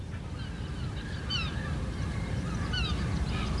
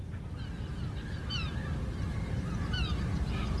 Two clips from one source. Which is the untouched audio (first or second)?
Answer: second